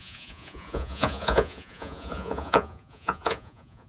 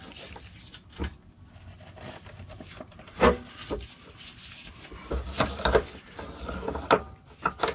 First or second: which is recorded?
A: second